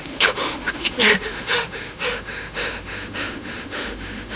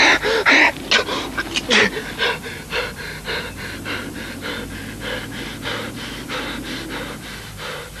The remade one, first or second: first